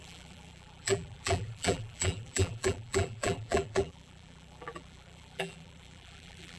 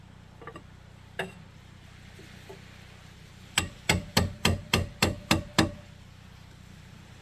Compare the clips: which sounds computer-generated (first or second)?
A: first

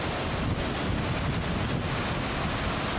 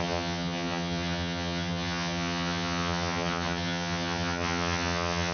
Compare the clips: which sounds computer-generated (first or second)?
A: second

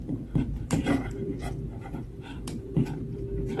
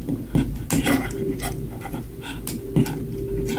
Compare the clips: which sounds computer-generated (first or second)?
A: first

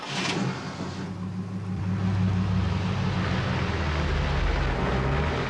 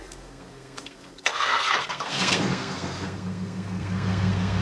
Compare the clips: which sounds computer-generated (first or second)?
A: second